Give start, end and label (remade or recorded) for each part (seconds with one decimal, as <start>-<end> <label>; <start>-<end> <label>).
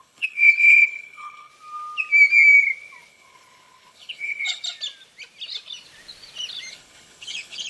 0.0-1.5 remade; 1.5-3.1 recorded; 3.1-4.6 remade; 4.6-6.7 recorded; 6.7-7.7 remade